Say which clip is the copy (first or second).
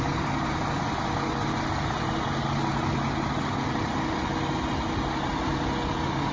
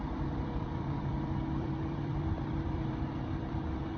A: second